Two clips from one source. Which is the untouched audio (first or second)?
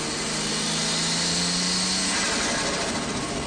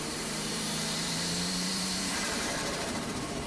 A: first